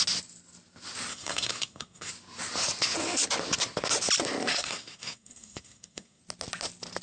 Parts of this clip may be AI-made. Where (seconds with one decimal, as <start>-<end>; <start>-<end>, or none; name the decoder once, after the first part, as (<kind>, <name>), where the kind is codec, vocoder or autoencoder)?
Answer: 1.1-2.1 (codec, SNAC); 4.5-6.2